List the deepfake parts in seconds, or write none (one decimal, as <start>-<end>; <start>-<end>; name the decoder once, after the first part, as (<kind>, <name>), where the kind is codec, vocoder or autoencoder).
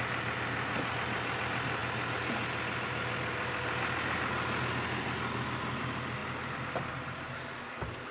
none